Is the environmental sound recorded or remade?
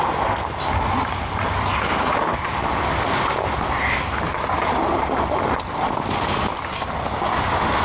recorded